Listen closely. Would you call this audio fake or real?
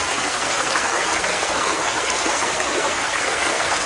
fake